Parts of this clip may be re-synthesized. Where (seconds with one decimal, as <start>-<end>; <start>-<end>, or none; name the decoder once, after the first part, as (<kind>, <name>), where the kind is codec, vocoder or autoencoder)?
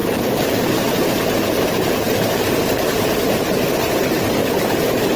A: 0.0-3.1 (vocoder, BigVGAN v2); 4.4-5.2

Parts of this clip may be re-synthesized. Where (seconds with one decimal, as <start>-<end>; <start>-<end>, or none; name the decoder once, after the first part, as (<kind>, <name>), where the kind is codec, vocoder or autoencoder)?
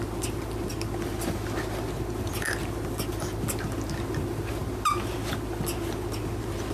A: none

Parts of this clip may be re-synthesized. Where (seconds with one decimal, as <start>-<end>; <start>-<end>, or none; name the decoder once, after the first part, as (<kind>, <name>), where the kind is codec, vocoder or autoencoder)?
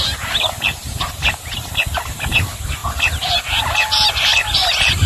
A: 0.0-2.8 (vocoder, BigVGAN v2)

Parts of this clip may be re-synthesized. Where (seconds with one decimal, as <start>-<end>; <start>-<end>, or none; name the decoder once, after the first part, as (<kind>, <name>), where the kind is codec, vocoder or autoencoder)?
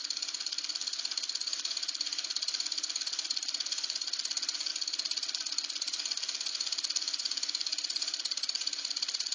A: 0.0-0.7 (vocoder, BigVGAN v2)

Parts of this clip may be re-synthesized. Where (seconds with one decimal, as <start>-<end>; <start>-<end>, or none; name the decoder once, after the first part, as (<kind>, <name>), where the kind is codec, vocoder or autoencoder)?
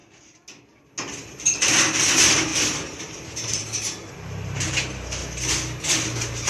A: 2.1-5.2 (vocoder, BigVGAN v2)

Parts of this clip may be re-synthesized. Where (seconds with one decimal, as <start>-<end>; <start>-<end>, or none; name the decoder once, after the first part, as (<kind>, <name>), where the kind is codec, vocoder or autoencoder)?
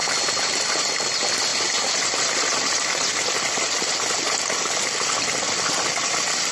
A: none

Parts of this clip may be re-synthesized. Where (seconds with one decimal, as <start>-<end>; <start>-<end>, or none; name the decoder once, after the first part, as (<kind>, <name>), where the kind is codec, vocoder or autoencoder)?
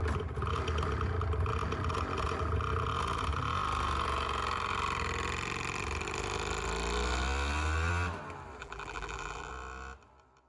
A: 8.6-9.5 (vocoder, BigVGAN v2)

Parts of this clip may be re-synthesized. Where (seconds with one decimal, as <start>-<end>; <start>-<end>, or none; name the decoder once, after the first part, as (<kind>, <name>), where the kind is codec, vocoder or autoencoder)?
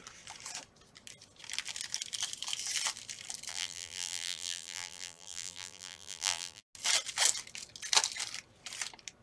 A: 3.5-6.6 (vocoder, BigVGAN v2)